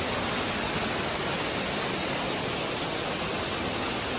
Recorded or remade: recorded